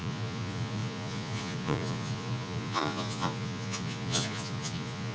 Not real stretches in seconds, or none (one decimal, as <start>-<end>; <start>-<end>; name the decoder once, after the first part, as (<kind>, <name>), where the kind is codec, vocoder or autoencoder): 0.0-5.1 (vocoder, Vocos)